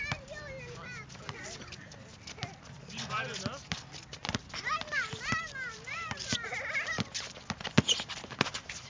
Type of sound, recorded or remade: recorded